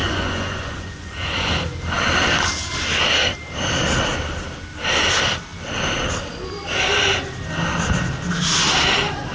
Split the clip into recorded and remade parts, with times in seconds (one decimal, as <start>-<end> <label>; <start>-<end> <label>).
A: 0.0-1.5 remade; 1.5-9.3 recorded